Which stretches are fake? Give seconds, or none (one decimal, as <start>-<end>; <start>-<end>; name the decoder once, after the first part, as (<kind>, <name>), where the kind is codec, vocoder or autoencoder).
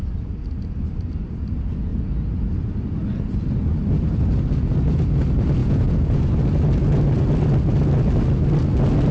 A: 5.6-6.2 (vocoder, Vocos)